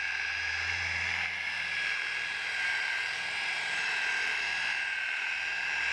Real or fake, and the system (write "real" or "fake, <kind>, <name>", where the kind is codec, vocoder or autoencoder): fake, vocoder, BigVGAN v2